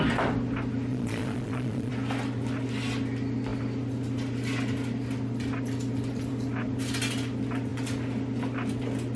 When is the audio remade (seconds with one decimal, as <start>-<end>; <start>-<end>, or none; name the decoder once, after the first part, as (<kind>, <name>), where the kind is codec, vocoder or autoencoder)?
0.9-1.9 (vocoder, Vocos)